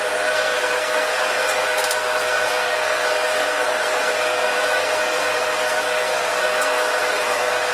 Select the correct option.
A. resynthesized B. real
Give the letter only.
A